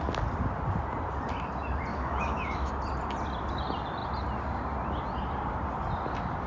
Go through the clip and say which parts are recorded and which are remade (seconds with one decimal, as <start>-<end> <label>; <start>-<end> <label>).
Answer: 0.0-1.9 recorded; 1.9-2.7 remade; 2.7-6.5 recorded